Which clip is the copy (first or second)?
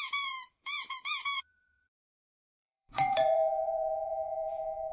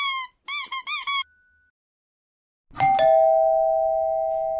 first